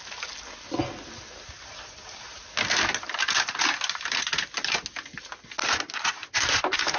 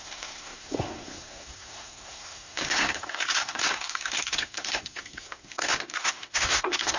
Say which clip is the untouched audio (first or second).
first